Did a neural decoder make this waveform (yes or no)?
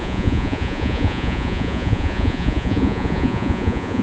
yes